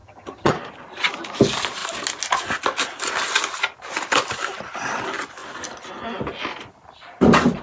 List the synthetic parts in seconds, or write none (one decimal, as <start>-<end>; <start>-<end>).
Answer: 0.0-0.5